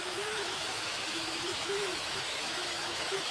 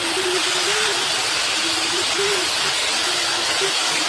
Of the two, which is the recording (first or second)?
second